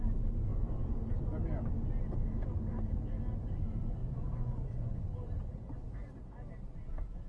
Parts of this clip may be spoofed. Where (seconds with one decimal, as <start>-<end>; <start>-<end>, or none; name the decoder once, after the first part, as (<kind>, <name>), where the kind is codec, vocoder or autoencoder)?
4.0-5.0 (vocoder, Vocos)